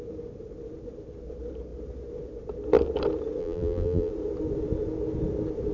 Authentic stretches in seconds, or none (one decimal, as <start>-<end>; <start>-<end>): 0.0-3.4; 4.1-5.7